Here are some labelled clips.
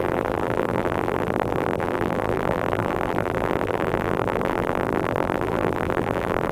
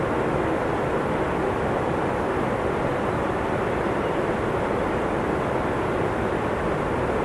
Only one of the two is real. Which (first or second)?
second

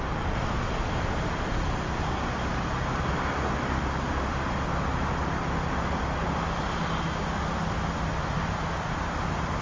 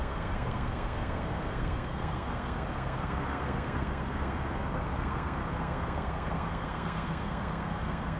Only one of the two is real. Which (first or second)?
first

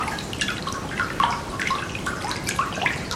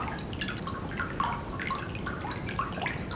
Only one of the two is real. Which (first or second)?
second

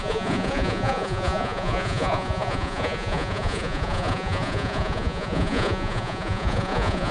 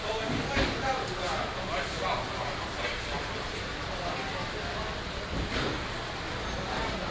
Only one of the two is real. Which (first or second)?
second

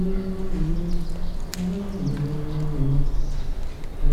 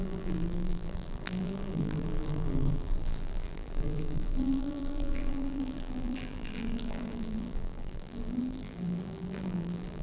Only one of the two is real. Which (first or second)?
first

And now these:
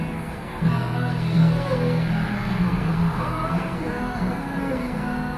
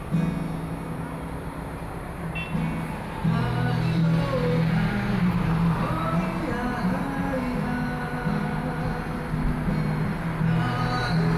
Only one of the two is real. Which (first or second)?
second